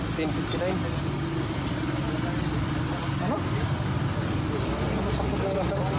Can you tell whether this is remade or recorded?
recorded